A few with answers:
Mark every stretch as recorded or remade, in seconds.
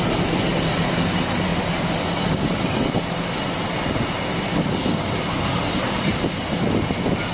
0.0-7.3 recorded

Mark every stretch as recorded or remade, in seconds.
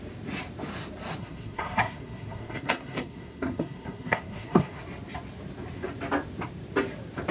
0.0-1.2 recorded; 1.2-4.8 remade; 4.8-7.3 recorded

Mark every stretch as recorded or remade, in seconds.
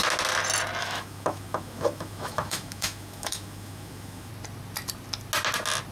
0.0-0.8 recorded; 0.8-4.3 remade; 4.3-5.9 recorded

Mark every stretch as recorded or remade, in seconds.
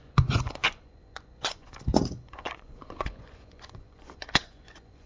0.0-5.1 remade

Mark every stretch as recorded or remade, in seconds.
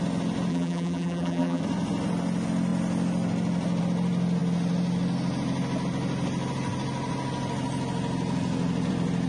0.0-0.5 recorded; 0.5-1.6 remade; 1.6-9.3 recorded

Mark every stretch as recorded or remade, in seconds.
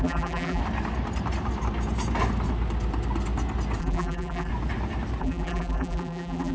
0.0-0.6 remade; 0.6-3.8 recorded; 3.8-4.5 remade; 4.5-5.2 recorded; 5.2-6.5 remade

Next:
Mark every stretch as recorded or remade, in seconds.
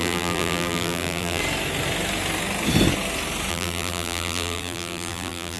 0.0-1.4 remade; 1.4-3.5 recorded; 3.5-5.6 remade